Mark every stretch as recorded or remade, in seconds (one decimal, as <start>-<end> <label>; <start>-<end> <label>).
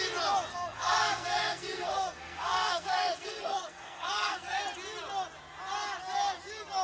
0.0-0.5 recorded; 0.5-4.6 remade; 4.6-6.8 recorded